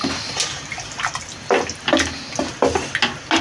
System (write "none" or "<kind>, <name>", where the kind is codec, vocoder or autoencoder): none